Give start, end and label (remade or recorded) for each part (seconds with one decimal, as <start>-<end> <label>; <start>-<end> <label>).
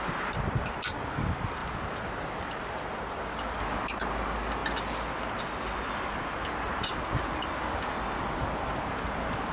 0.0-9.5 recorded